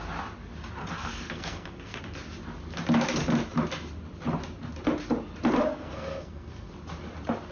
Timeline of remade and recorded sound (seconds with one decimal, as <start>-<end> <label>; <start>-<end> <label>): 0.0-0.8 recorded; 0.8-2.0 remade; 2.0-5.7 recorded; 5.7-6.7 remade; 6.7-7.5 recorded